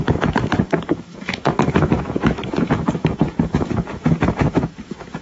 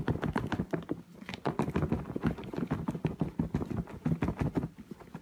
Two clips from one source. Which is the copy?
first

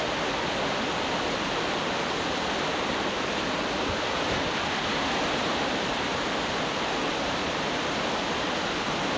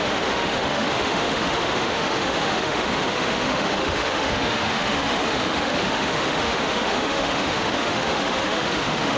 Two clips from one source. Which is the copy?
second